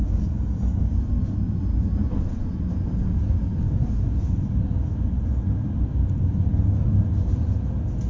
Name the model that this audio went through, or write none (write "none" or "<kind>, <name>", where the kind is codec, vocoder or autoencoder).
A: none